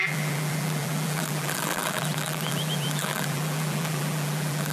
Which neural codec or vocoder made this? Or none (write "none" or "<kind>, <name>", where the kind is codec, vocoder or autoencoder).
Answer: vocoder, BigVGAN v2